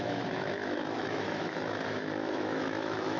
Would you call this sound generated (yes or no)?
yes